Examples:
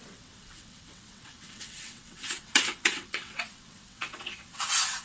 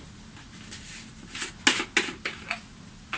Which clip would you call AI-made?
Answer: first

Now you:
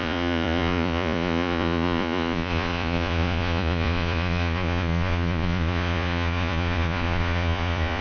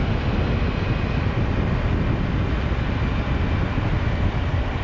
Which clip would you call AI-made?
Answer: first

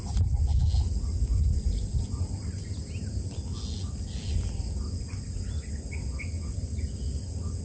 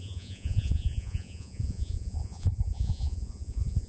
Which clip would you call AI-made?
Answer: second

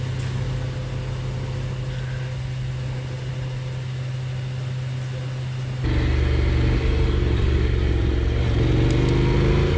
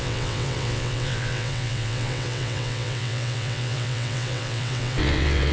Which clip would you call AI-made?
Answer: second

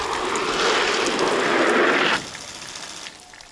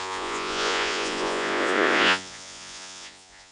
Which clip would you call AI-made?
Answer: second